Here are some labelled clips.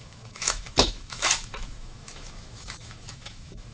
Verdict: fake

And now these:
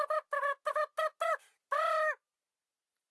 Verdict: real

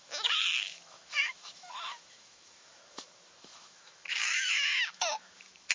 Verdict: fake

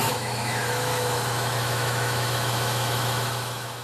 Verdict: fake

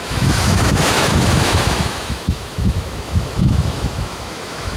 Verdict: fake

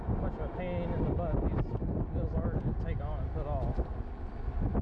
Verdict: real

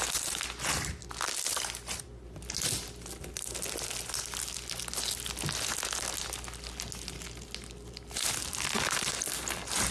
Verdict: real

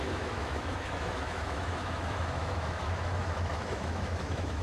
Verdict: fake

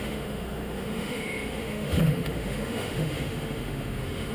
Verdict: fake